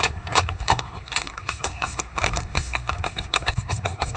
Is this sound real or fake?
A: fake